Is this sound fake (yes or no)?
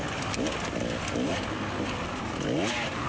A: no